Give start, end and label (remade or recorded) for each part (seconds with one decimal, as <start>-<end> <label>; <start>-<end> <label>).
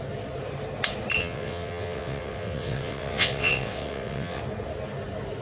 0.0-1.2 recorded; 1.2-4.4 remade; 4.4-5.4 recorded